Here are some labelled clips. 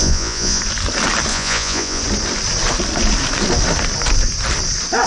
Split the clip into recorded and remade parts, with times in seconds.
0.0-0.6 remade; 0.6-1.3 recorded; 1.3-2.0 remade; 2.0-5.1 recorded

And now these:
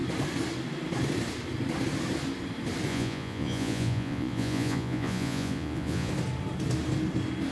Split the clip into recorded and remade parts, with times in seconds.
0.0-2.9 recorded; 2.9-6.1 remade; 6.1-7.5 recorded

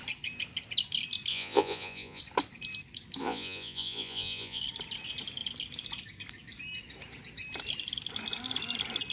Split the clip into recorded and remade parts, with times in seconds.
0.0-1.3 recorded; 1.3-2.2 remade; 2.2-3.2 recorded; 3.2-4.6 remade; 4.6-9.1 recorded